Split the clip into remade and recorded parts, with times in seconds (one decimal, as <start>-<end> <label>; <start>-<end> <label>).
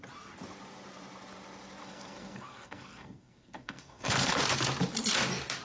0.0-1.8 recorded; 1.8-4.4 remade; 4.4-5.6 recorded